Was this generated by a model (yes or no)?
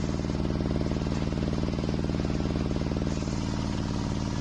no